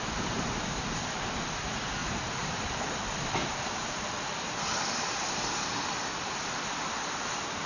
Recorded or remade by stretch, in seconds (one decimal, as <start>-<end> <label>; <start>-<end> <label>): 0.0-2.0 recorded; 2.0-6.0 remade; 6.0-7.7 recorded